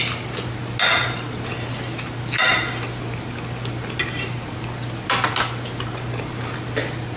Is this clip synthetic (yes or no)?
no